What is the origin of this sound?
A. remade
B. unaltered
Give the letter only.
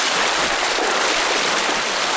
B